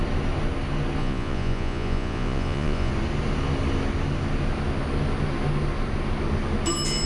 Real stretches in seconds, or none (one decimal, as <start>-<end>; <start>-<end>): 0.0-1.0; 2.9-7.1